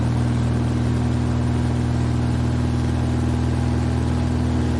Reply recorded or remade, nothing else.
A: recorded